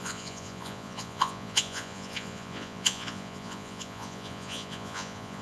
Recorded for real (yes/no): no